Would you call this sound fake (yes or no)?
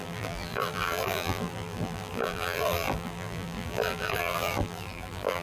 yes